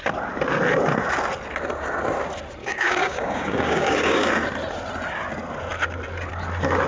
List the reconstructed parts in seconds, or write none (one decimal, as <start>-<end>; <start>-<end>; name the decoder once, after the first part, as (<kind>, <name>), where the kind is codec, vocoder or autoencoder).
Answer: 2.6-4.3 (codec, DAC)